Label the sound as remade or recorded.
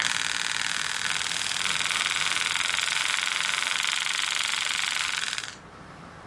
recorded